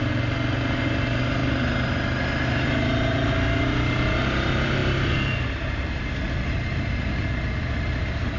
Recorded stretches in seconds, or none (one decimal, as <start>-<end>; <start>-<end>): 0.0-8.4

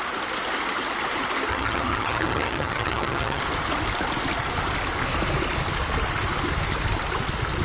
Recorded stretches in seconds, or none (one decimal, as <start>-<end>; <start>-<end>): 0.0-1.5; 3.4-7.6

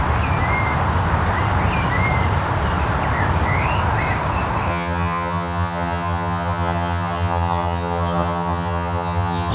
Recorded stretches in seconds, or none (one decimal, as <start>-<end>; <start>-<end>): 0.0-4.7

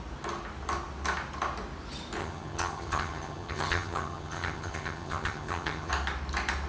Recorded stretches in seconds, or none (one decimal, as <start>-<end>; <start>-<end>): 0.0-2.2; 5.9-6.7